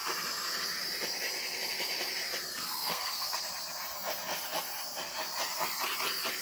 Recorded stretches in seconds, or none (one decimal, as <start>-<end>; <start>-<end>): 0.0-2.5; 3.4-6.4

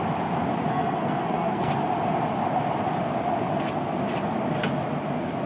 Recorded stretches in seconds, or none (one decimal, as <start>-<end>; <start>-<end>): 0.0-0.7; 1.7-5.5

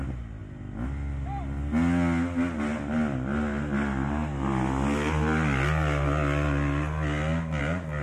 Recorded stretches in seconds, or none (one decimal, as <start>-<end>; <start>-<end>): 0.0-8.0

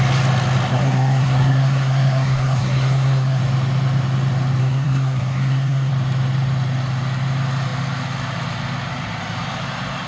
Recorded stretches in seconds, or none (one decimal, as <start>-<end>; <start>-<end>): 0.0-0.7; 3.4-4.6; 5.9-10.1

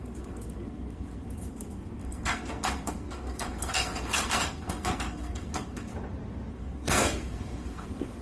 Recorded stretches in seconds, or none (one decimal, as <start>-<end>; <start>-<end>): 5.9-6.5

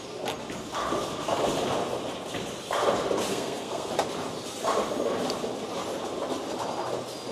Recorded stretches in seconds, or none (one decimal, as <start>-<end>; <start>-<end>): 0.0-3.3; 3.9-7.3